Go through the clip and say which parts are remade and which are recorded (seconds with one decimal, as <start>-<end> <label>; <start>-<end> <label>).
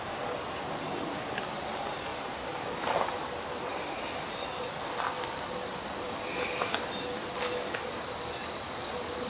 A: 0.0-9.3 recorded